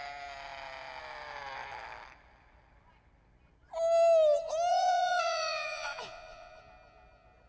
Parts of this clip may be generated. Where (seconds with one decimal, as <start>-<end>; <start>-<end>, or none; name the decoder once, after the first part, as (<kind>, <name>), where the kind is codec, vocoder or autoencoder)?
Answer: 4.7-6.6 (vocoder, Vocos)